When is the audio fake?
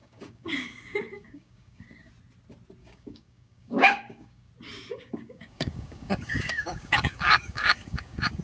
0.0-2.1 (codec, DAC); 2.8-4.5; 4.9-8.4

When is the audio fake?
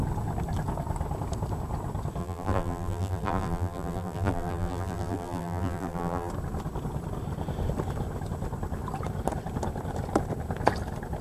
2.2-6.3 (vocoder, BigVGAN v2)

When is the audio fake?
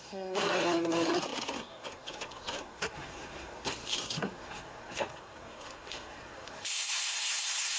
0.0-7.8 (codec, SNAC)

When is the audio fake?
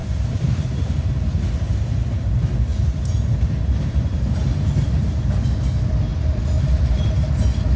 0.0-0.8 (vocoder, BigVGAN v2); 2.7-5.2; 6.1-7.3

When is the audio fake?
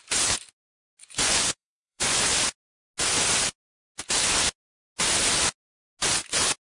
1.0-2.2 (vocoder, Vocos)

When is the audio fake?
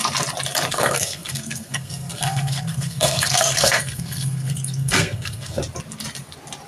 0.7-5.6 (codec, SNAC)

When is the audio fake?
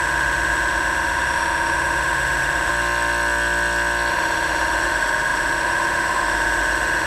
0.0-2.7 (autoencoder, DAC-VAE); 4.1-7.1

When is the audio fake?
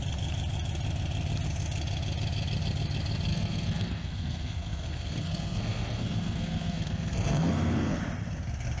3.3-8.0 (codec, SNAC)